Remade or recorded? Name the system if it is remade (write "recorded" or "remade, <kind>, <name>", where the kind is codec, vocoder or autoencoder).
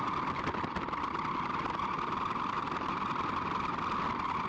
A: recorded